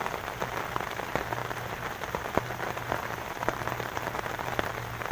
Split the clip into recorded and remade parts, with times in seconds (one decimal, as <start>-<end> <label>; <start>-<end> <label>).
0.0-1.4 recorded; 1.4-4.5 remade; 4.5-5.1 recorded